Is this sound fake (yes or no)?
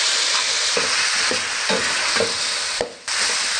no